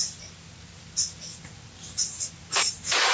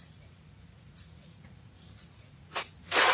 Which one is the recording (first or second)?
first